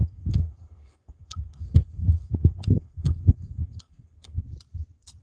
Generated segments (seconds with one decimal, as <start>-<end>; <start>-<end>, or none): 0.0-4.4